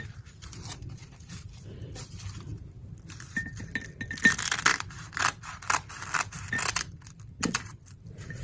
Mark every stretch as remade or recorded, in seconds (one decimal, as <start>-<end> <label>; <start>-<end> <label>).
0.0-8.4 recorded